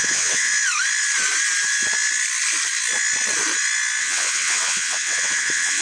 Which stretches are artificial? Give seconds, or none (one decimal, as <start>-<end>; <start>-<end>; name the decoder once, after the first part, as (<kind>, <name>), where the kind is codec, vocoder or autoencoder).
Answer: 0.0-0.5 (vocoder, WaveNeXt); 4.0-5.8